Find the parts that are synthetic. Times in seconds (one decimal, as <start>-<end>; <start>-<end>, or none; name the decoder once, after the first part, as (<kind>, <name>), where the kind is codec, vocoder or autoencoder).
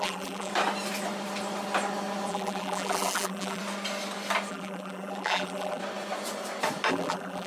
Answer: 0.0-0.5 (vocoder, BigVGAN v2); 2.3-3.6; 4.5-5.8; 6.9-7.5